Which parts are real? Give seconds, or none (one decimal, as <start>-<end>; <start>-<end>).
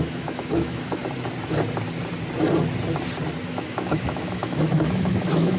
1.0-3.5